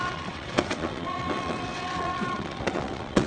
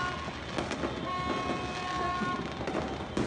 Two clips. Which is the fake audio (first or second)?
first